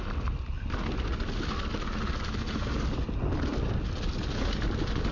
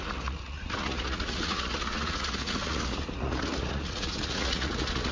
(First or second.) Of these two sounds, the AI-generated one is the second